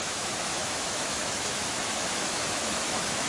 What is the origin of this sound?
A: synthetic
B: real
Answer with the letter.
A